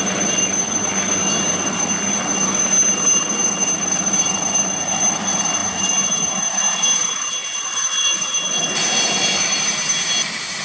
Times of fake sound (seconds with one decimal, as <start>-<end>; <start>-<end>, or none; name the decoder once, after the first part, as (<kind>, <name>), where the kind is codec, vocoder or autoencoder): none